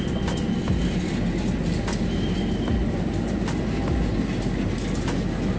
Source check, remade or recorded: recorded